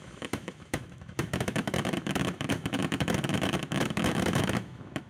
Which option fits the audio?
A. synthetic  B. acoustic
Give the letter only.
A